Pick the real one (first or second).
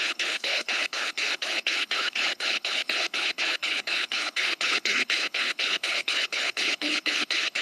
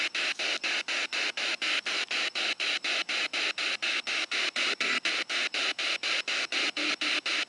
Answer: second